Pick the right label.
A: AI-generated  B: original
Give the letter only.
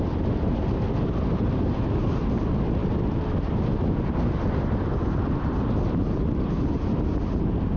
B